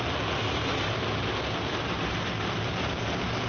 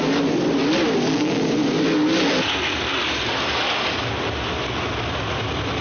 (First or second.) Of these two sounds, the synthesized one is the first